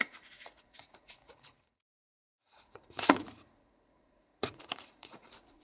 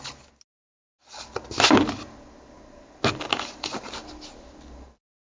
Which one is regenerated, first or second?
first